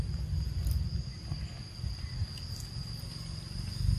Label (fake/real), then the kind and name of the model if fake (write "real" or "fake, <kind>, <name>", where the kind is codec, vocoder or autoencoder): real